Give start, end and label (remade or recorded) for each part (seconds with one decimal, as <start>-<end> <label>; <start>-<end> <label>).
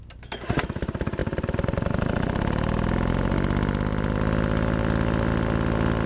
0.0-6.1 recorded